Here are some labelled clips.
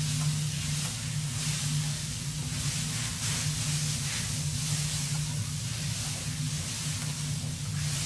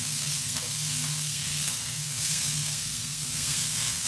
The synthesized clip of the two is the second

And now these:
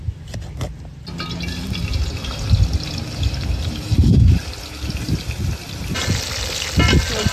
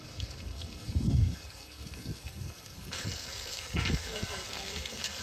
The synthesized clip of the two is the second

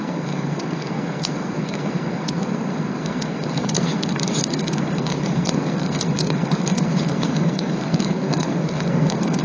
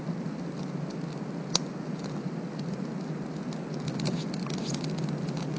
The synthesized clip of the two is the first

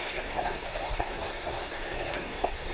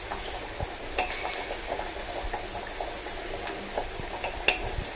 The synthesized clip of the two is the first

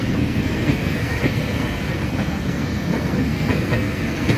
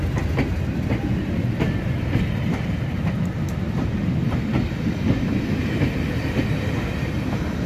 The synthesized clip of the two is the first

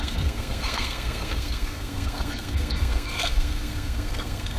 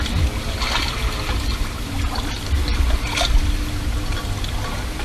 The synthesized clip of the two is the first